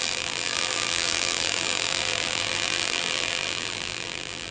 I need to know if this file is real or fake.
fake